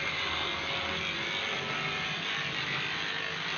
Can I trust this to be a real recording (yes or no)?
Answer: yes